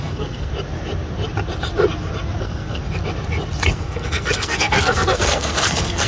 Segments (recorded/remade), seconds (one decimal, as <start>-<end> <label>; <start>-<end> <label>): 0.0-0.5 remade; 0.5-2.4 recorded; 2.4-2.8 remade; 2.8-3.7 recorded; 3.7-6.1 remade